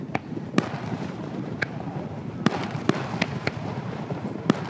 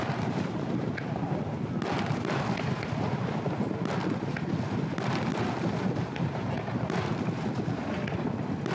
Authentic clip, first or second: second